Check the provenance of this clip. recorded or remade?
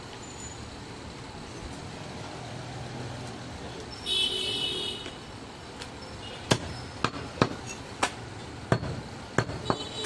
recorded